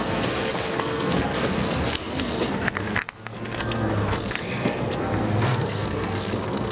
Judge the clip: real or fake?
fake